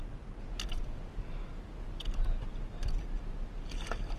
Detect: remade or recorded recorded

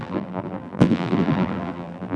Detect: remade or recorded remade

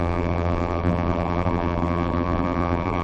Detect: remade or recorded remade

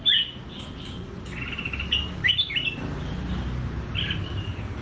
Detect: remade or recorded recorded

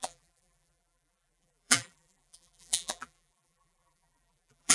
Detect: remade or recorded remade